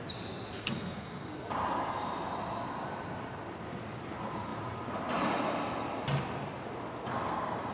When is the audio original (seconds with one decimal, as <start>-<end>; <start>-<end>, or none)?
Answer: 0.0-0.6; 1.3-7.1